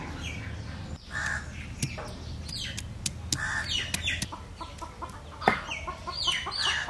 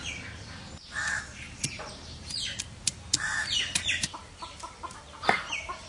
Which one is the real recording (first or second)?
first